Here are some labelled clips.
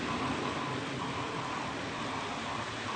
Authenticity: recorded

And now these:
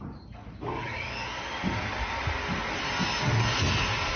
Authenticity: recorded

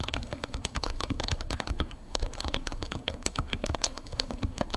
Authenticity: remade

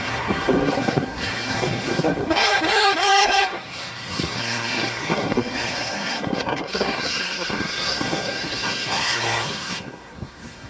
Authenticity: remade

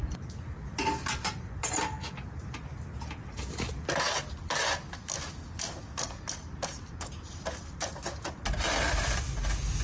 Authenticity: recorded